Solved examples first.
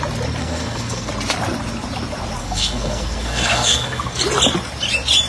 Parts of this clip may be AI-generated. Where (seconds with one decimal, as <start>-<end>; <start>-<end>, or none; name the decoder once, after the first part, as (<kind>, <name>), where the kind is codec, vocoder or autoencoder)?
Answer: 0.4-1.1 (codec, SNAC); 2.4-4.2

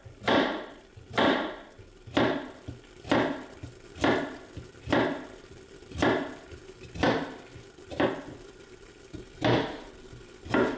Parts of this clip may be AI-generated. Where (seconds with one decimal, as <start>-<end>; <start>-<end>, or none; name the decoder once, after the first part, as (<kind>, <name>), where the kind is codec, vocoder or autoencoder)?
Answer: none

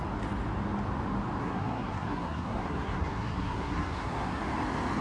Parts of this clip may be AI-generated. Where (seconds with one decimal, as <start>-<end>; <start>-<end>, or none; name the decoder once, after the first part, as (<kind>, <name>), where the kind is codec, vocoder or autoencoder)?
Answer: 1.4-4.4 (codec, SNAC)

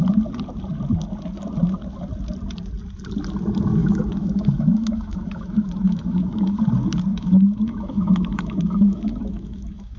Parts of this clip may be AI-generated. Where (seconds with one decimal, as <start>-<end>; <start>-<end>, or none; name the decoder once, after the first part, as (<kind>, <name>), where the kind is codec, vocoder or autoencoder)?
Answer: 3.8-6.6 (autoencoder, DAC-VAE); 7.1-10.0

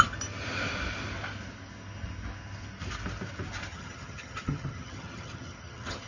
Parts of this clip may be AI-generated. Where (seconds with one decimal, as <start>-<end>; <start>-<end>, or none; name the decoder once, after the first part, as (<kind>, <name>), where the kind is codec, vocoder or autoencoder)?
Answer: 3.7-6.1 (vocoder, HiFi-GAN)

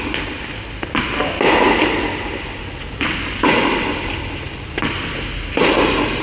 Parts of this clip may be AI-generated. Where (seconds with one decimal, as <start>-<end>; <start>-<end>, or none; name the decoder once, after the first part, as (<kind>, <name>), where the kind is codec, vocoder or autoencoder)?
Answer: none